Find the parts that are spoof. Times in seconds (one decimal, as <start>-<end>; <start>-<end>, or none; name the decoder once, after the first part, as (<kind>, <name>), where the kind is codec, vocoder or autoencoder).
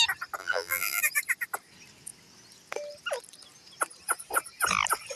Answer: 0.4-1.0 (vocoder, BigVGAN v2)